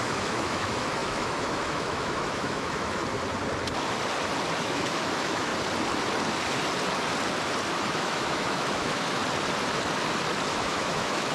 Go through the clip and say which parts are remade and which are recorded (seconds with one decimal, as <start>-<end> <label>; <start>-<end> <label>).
0.0-3.0 remade; 3.0-4.6 recorded; 4.6-5.5 remade; 5.5-7.7 recorded; 7.7-9.2 remade; 9.2-10.5 recorded; 10.5-11.3 remade